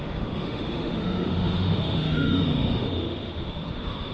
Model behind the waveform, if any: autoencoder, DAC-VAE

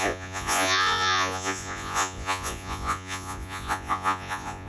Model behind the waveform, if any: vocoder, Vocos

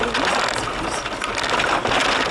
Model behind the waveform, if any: none